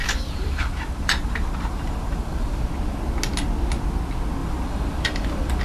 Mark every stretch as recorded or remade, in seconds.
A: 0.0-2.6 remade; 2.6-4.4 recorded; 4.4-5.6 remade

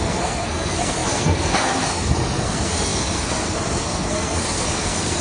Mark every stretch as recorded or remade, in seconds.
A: 0.0-5.2 remade

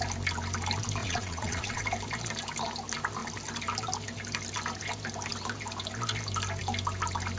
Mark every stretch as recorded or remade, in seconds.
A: 0.0-1.0 recorded; 1.0-1.8 remade; 1.8-7.4 recorded

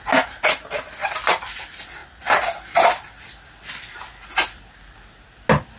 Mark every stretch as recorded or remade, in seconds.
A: 0.0-1.0 recorded; 1.0-1.6 remade; 1.6-5.8 recorded

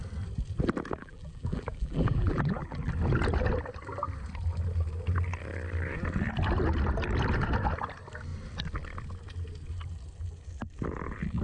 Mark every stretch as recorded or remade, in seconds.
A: 0.0-1.0 recorded; 1.0-2.9 remade; 2.9-11.4 recorded

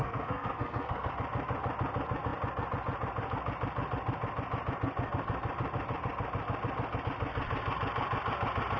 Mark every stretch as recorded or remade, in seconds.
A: 0.0-1.1 remade; 1.1-8.8 recorded